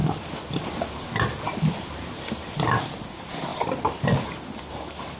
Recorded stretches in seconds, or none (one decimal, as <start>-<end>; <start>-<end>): 0.0-5.2